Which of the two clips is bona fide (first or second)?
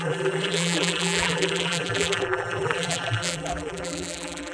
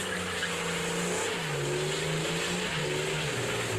second